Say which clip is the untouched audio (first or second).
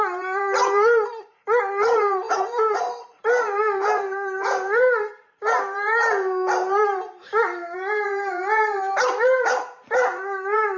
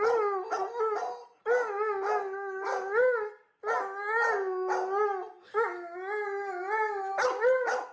second